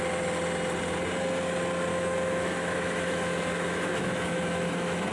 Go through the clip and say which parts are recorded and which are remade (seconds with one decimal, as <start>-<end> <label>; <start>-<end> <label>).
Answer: 0.0-1.9 recorded; 1.9-5.1 remade